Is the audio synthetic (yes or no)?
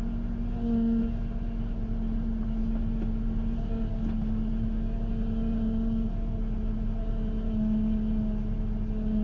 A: no